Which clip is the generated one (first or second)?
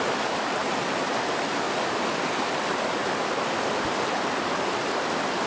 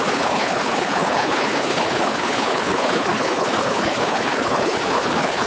second